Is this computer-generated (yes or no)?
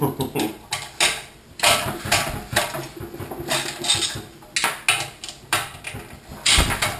no